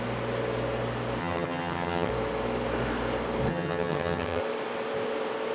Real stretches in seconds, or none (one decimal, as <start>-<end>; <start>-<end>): 0.0-1.2; 2.1-3.5; 4.4-5.5